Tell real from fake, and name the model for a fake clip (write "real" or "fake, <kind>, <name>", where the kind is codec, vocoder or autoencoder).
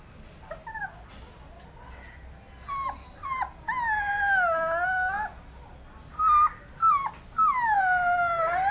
real